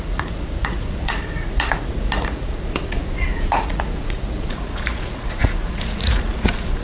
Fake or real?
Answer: fake